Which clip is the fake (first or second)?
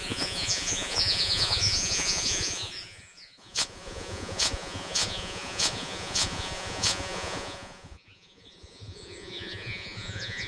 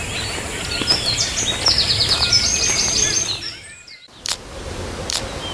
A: first